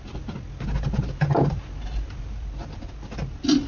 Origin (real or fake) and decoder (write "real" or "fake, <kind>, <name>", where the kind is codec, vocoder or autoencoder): real